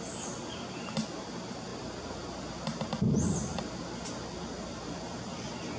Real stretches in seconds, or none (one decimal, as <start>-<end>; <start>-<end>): 0.0-5.8